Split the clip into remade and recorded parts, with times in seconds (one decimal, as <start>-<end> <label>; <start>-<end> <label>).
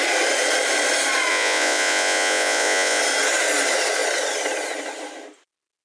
0.0-1.3 recorded; 1.3-3.0 remade; 3.0-5.8 recorded